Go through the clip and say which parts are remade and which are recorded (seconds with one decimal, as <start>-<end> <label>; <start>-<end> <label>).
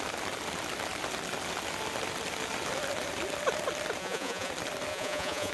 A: 0.0-4.0 recorded; 4.0-4.5 remade; 4.5-4.9 recorded; 4.9-5.5 remade